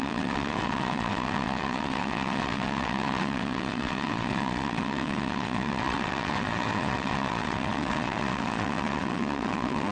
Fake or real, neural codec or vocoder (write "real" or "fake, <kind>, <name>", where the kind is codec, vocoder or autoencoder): fake, vocoder, WaveNeXt